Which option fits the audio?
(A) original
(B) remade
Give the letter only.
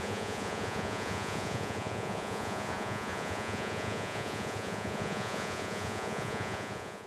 B